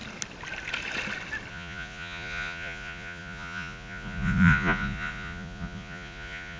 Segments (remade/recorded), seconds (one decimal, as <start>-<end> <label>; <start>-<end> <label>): 0.0-1.5 recorded; 1.5-6.6 remade